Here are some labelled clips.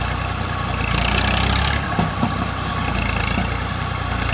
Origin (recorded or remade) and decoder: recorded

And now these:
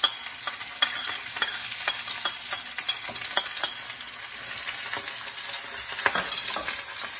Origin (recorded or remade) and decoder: recorded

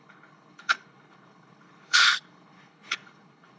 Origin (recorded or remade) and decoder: remade, codec, HILCodec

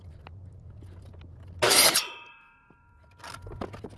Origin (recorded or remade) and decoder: recorded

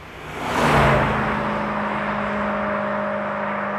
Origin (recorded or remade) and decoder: recorded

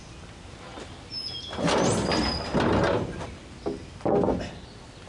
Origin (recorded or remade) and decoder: recorded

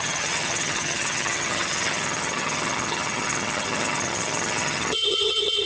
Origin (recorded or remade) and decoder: remade, vocoder, HiFi-GAN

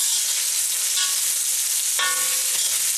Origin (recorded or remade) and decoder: recorded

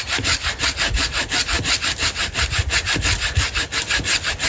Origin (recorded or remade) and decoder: recorded